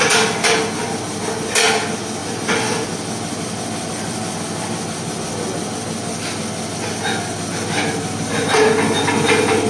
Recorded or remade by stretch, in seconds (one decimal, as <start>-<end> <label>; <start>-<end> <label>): 0.0-9.7 recorded